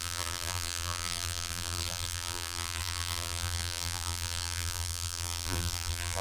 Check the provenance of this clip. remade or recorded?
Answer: remade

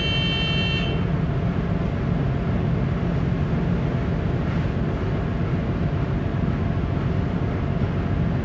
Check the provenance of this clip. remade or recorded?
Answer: recorded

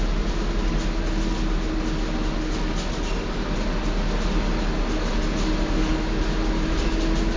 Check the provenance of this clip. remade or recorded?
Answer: recorded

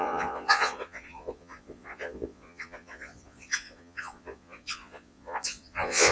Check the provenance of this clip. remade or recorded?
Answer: remade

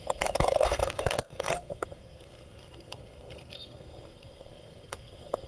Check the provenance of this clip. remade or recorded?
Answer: remade